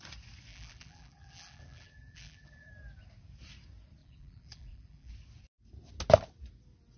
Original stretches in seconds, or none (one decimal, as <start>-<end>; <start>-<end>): 0.0-0.5; 2.7-4.0; 5.1-7.0